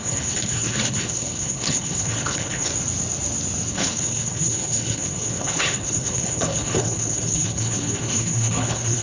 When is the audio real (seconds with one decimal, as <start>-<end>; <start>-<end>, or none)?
2.7-3.7